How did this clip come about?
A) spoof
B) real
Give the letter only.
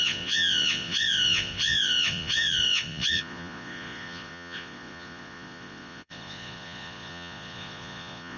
A